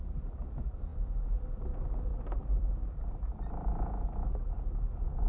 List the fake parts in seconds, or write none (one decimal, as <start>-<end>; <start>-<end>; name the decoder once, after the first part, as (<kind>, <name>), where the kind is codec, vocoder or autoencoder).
0.0-0.9 (vocoder, BigVGAN v2); 1.4-5.3